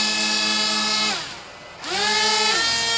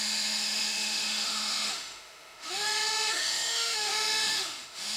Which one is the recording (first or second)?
first